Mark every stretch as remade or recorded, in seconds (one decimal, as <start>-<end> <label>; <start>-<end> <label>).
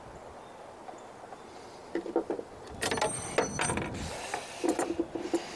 0.0-1.8 recorded; 1.8-2.9 remade; 2.9-5.6 recorded